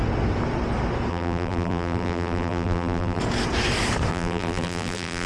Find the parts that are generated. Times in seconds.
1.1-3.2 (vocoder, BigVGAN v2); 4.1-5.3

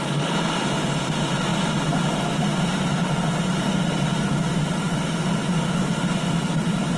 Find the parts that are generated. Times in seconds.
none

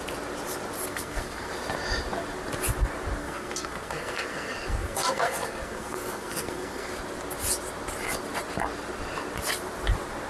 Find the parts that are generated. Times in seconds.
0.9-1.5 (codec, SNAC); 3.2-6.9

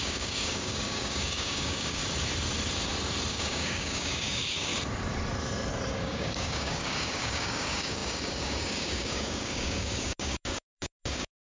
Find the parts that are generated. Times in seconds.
0.0-2.0 (codec, DAC); 3.3-4.7; 6.0-11.5

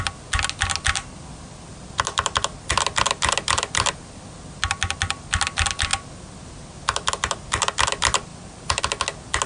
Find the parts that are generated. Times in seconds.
8.3-8.8 (vocoder, BigVGAN v2)